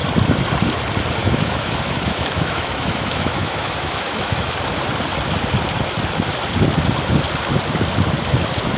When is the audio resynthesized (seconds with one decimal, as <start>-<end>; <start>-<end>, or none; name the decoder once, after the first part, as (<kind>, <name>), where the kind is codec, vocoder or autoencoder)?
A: 1.2-4.5 (autoencoder, DAC-VAE)